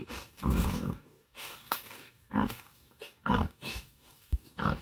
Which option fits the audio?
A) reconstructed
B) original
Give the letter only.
A